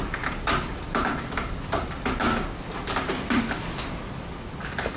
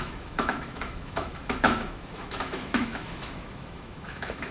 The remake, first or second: second